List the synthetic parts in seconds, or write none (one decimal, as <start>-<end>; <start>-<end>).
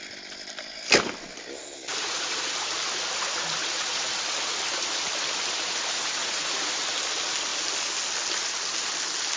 3.6-4.5; 6.2-6.7